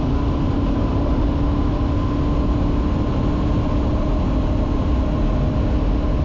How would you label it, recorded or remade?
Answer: recorded